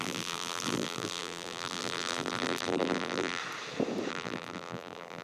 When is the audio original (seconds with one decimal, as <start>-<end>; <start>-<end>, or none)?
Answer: 3.4-4.1